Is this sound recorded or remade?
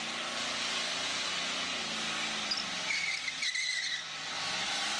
recorded